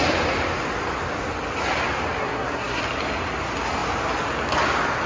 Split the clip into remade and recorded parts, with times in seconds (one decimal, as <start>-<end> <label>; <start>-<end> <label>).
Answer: 0.0-2.2 recorded; 2.2-2.8 remade; 2.8-5.1 recorded